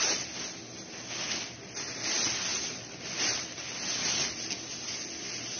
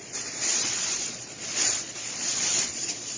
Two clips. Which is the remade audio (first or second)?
second